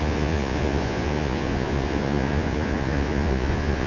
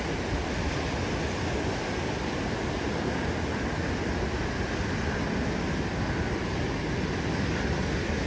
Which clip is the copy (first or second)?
first